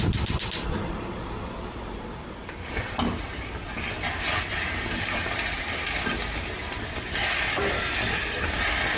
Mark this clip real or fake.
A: real